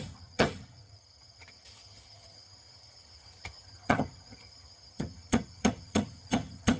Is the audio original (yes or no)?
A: no